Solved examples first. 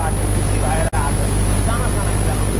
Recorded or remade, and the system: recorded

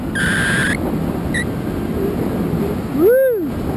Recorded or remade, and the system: recorded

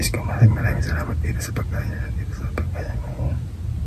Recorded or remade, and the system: recorded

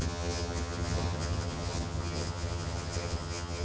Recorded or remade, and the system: remade, vocoder, HiFi-GAN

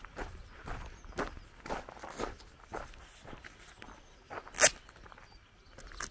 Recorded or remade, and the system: recorded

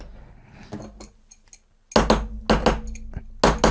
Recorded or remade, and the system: recorded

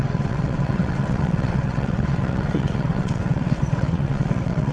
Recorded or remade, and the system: remade, vocoder, WaveNeXt